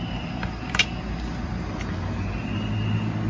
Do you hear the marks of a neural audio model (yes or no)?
no